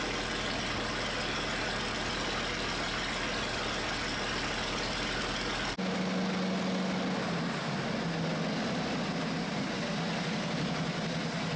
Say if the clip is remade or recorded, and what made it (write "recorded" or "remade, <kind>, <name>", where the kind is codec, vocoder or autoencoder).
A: recorded